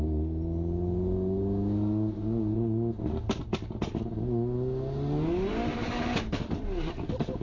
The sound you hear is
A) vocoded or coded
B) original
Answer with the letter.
B